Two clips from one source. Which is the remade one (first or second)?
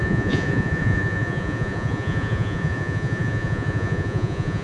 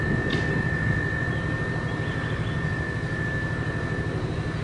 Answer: first